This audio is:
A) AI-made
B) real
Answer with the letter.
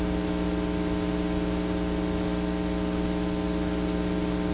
B